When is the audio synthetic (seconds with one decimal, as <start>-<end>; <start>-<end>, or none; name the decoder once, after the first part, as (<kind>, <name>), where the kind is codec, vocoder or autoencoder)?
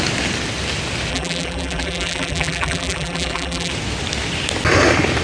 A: 1.1-3.7 (vocoder, BigVGAN v2)